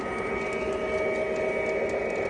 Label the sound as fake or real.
real